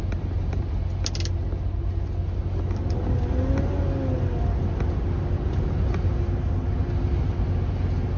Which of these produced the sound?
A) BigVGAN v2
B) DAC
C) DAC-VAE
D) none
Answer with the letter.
D